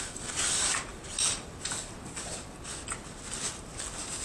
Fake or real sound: real